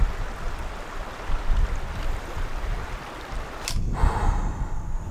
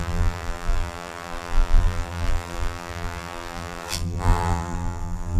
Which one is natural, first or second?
first